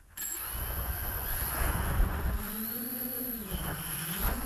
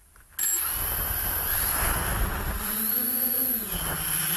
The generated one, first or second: first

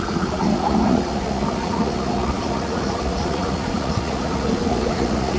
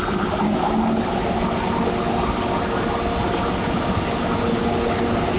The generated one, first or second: first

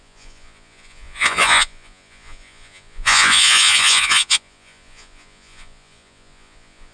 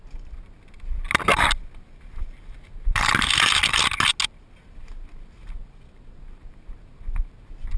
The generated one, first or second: first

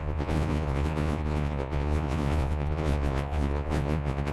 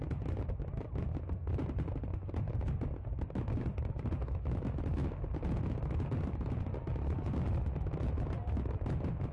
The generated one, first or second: first